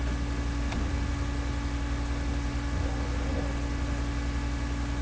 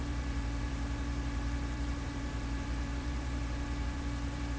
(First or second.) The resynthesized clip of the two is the second